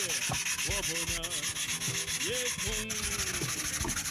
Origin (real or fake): real